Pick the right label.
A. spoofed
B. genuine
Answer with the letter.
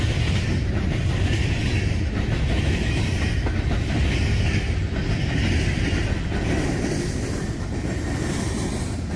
B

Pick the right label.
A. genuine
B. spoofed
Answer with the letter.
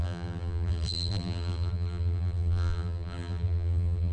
B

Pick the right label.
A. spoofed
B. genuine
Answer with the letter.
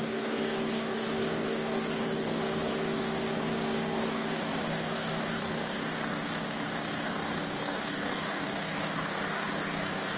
A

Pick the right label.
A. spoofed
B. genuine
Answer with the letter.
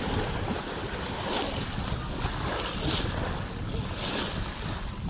B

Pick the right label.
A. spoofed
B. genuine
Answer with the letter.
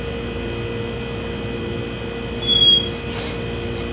B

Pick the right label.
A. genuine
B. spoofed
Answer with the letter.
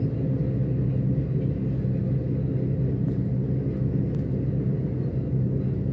A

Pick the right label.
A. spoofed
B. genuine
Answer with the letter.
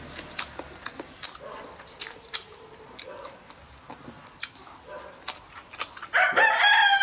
B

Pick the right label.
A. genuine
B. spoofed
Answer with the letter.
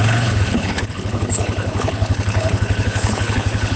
B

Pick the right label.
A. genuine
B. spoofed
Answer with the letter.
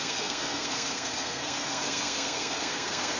B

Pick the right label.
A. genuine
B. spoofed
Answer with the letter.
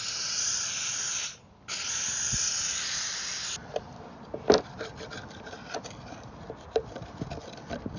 B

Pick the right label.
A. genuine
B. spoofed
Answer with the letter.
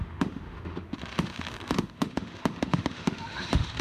B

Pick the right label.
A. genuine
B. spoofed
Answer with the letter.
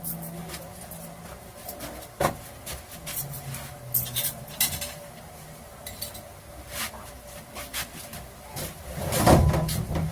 A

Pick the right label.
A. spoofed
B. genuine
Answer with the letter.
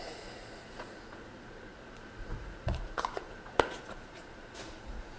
A